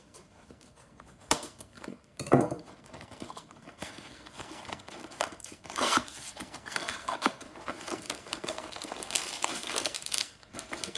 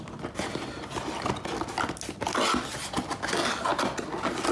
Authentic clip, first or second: second